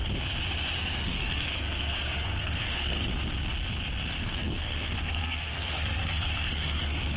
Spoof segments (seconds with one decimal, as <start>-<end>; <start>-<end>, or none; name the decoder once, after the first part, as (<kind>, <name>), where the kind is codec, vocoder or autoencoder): 0.8-3.1 (codec, SNAC); 4.2-7.2